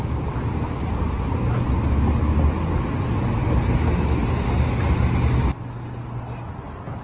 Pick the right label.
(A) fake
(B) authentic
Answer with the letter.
B